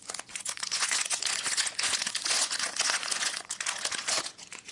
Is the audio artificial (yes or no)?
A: yes